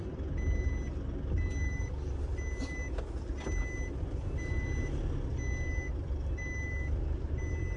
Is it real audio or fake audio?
real